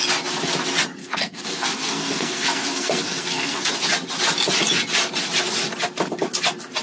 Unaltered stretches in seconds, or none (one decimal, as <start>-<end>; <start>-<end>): 0.0-1.0; 3.7-6.8